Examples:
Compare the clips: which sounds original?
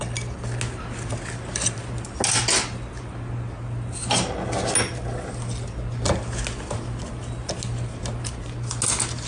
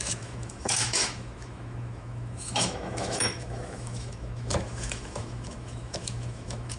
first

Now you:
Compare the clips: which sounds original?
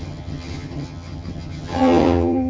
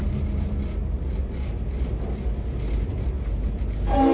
second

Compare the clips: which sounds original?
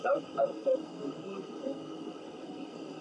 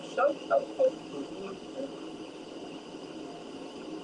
second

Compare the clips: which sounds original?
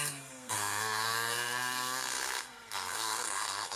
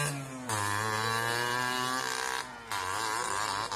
second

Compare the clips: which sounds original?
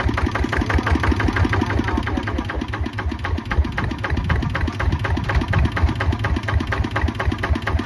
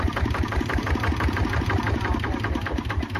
first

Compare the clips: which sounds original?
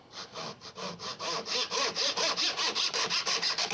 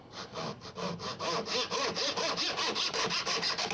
second